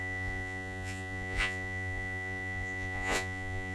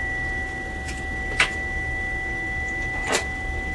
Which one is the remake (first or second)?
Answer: first